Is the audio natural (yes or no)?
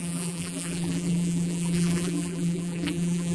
no